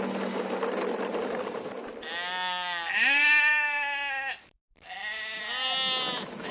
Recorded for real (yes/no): yes